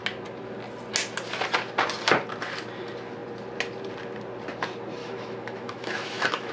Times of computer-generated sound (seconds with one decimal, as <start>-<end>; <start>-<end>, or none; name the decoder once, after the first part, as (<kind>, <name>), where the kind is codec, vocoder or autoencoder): 5.0-6.5 (autoencoder, DAC-VAE)